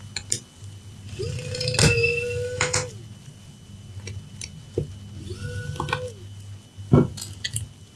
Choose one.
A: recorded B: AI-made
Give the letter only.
A